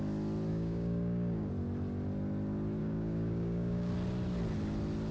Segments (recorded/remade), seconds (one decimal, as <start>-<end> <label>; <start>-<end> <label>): 0.0-0.5 recorded; 0.5-1.5 remade; 1.5-2.8 recorded; 2.8-3.9 remade; 3.9-5.1 recorded